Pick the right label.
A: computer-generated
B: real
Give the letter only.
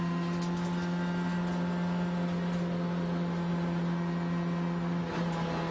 B